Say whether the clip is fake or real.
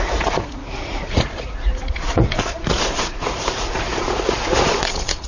fake